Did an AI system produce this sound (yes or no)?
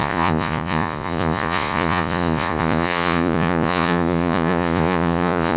yes